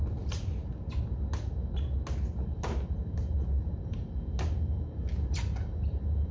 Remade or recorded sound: recorded